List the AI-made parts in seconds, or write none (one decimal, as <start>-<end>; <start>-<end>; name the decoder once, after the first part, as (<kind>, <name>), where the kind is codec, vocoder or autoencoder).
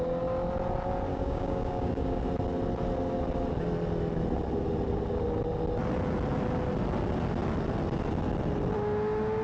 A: 1.1-2.2 (codec, DAC)